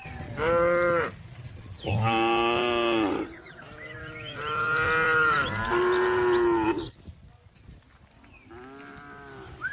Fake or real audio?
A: real